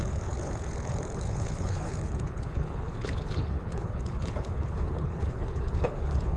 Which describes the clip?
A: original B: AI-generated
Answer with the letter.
B